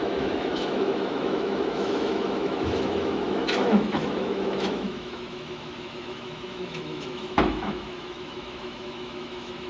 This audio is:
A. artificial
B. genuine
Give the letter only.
A